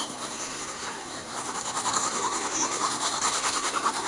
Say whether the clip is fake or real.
fake